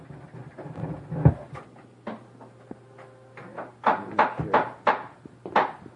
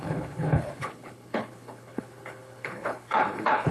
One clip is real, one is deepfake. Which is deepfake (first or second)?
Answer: second